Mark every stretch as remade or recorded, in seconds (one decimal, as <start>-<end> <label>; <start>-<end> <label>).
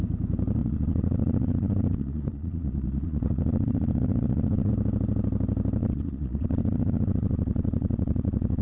0.0-0.6 recorded; 0.6-4.7 remade; 4.7-5.8 recorded; 5.8-8.6 remade